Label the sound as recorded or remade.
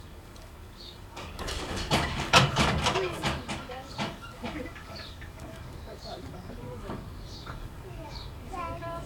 remade